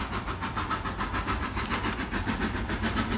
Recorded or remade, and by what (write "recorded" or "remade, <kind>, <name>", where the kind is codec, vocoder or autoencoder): recorded